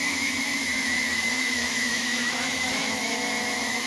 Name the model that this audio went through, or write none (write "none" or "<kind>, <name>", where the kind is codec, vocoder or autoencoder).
autoencoder, DAC-VAE